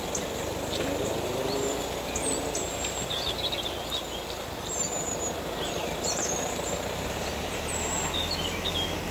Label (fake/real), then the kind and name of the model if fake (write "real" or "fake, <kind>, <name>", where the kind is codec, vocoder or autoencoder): real